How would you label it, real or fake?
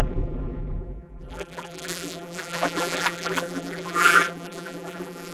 fake